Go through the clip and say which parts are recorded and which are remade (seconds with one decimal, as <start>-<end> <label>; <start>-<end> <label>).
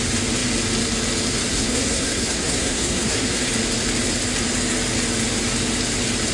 0.0-1.5 recorded; 1.5-3.5 remade; 3.5-6.3 recorded